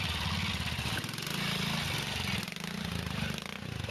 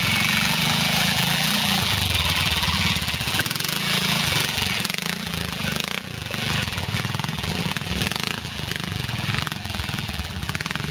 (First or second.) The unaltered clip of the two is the first